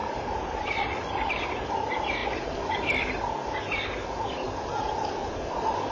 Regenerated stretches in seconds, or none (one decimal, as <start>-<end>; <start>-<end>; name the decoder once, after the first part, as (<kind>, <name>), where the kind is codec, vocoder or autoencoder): 0.0-1.3 (vocoder, BigVGAN v2)